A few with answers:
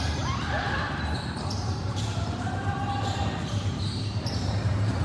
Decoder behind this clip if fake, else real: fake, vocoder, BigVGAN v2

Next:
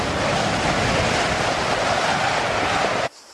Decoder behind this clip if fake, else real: real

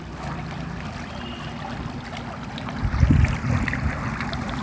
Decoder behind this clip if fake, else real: real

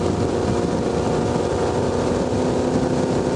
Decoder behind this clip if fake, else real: real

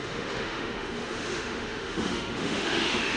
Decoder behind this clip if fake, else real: fake, autoencoder, DAC-VAE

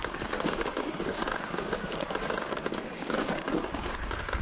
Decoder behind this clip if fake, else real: fake, codec, DAC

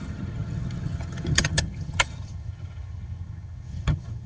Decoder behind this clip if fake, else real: fake, vocoder, HiFi-GAN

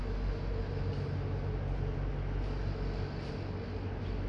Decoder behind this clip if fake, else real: real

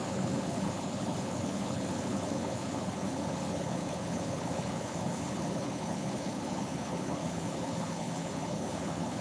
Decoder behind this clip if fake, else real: fake, codec, HILCodec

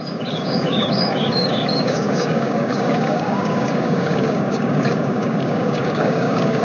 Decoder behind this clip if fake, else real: fake, codec, DAC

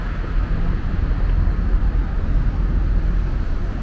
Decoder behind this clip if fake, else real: real